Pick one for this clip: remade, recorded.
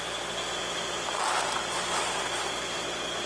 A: recorded